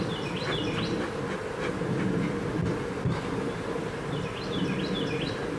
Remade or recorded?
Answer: recorded